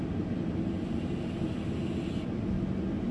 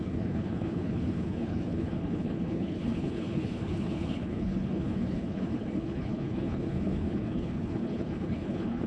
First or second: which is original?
first